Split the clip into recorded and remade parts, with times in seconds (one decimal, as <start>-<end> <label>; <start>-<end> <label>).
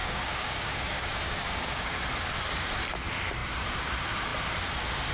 0.0-2.0 remade; 2.0-5.1 recorded